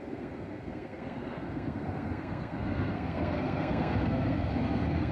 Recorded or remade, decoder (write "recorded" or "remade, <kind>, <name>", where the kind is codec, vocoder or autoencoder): remade, codec, SNAC